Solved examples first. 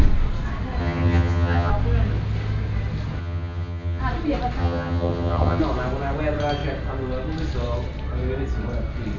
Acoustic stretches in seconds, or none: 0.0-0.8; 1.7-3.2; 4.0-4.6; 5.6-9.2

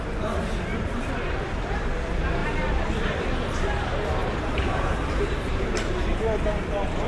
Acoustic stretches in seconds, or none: 0.0-0.7; 2.0-2.4; 3.0-4.2; 6.2-7.1

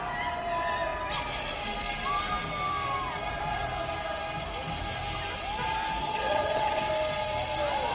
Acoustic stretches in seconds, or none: 0.0-6.0; 6.8-7.9

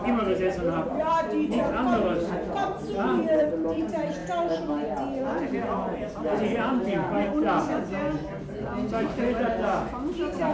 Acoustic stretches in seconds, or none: 0.0-2.6; 3.8-10.5

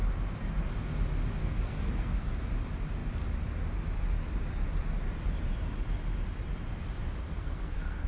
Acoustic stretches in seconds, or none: 0.0-1.4; 2.3-7.2

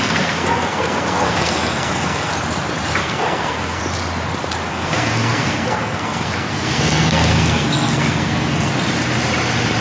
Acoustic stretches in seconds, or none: 2.3-3.0; 3.8-4.7; 8.7-9.8